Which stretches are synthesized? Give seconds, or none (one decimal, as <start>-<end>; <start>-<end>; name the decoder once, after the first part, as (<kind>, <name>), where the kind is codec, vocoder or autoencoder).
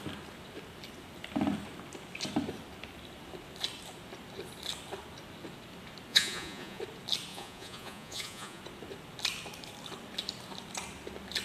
6.1-6.8 (vocoder, Vocos); 7.3-8.6